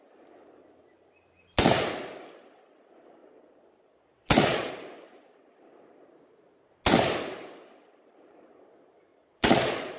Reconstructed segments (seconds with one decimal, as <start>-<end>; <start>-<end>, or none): 3.2-4.7; 9.1-10.0